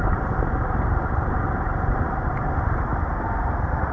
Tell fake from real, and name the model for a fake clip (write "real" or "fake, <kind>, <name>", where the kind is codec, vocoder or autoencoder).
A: fake, vocoder, BigVGAN v2